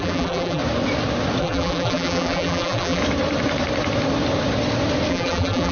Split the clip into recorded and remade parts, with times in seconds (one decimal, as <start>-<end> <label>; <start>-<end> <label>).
0.0-0.6 remade; 0.6-1.4 recorded; 1.4-3.0 remade; 3.0-5.1 recorded; 5.1-5.7 remade